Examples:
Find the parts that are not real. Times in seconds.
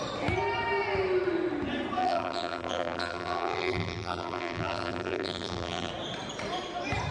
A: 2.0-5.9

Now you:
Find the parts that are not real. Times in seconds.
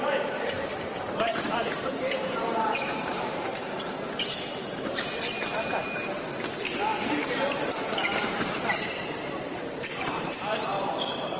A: 0.0-6.0; 8.2-11.4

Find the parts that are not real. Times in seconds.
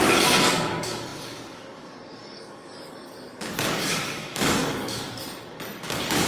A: 0.0-6.3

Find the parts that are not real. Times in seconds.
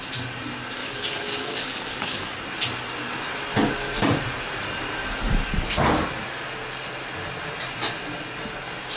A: 0.8-2.4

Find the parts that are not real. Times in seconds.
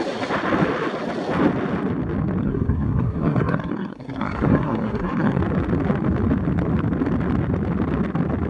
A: 2.4-5.4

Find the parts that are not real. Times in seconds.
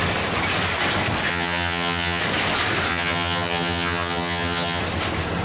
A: 1.3-2.2; 2.9-4.8